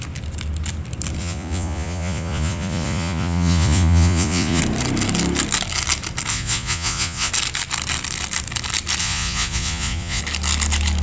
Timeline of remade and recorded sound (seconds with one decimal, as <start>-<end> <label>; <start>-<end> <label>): 0.0-1.2 recorded; 1.2-4.6 remade; 4.6-6.3 recorded; 6.3-7.3 remade; 7.3-9.0 recorded; 9.0-10.2 remade; 10.2-11.0 recorded